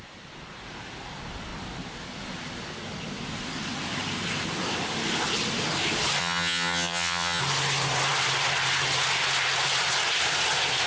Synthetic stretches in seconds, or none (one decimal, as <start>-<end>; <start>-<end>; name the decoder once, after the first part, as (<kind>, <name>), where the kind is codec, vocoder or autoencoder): 6.2-7.4 (vocoder, HiFi-GAN)